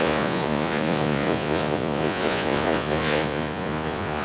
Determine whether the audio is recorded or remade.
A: remade